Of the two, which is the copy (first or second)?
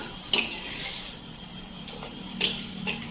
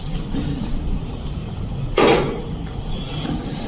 second